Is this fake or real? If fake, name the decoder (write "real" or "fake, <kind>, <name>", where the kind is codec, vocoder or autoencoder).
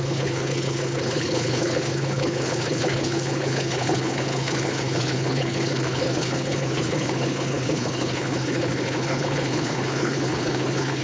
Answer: fake, codec, HILCodec